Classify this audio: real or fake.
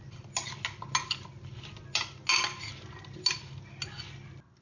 real